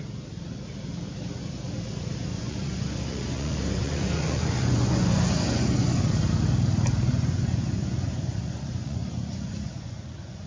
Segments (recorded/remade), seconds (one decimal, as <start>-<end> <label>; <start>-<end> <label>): 0.0-2.3 recorded; 2.3-6.0 remade; 6.0-7.1 recorded; 7.1-10.5 remade